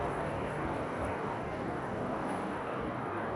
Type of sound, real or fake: fake